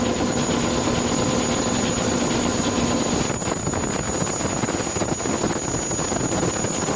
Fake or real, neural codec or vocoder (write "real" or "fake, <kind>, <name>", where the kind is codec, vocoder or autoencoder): real